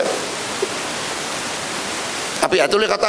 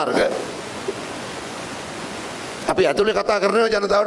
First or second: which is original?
first